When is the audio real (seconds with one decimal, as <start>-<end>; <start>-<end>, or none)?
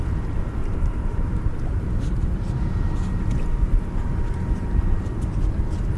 0.0-0.6; 2.0-6.0